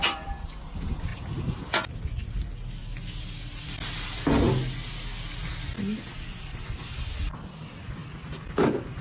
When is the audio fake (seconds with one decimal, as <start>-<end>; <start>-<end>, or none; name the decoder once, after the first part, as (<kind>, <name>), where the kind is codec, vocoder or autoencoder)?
none